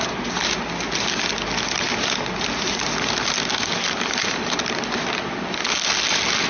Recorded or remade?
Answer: recorded